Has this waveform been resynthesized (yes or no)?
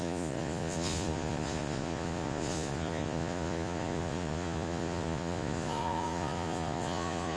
yes